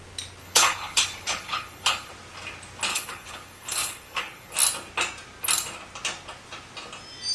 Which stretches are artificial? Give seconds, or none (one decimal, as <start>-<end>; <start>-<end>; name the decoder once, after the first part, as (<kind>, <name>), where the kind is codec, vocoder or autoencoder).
0.4-2.1 (codec, HILCodec); 2.9-4.5